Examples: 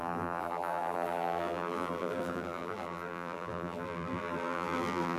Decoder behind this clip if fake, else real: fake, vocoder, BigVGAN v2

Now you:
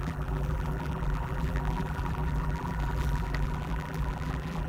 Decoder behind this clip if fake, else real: fake, vocoder, BigVGAN v2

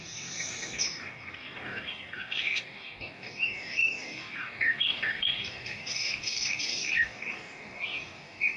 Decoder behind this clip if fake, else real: fake, codec, DAC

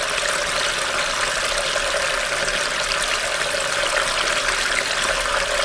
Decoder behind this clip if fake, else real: real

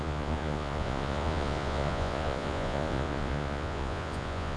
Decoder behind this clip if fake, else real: fake, vocoder, Vocos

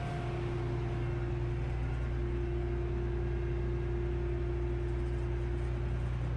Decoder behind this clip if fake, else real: real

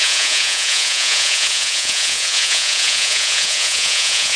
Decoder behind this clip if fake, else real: fake, vocoder, Vocos